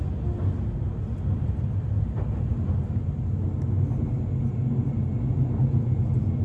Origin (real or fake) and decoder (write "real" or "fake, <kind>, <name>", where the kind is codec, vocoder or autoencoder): real